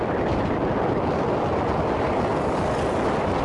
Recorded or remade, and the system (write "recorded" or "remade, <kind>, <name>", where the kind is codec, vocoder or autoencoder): recorded